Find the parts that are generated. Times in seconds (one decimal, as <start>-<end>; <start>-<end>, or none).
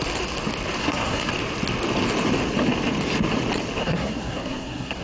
0.8-1.3; 3.8-5.0